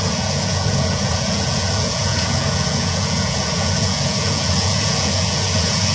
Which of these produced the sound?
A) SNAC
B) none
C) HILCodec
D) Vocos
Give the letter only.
D